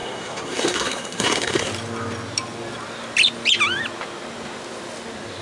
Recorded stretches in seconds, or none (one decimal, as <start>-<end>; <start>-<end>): 1.7-5.4